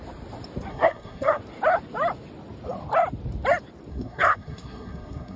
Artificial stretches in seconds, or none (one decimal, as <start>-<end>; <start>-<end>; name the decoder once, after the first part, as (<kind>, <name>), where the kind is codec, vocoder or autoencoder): 0.7-1.4 (codec, SNAC); 3.9-5.4